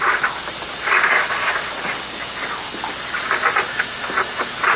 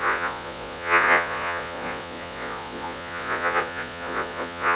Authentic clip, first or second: first